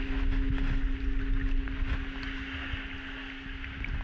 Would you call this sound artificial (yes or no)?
no